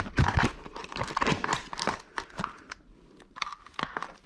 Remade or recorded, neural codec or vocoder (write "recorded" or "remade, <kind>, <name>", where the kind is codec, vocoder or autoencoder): recorded